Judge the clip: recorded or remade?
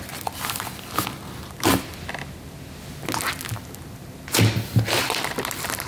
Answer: recorded